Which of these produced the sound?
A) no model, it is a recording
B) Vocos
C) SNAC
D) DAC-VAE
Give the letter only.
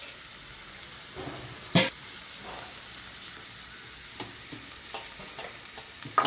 A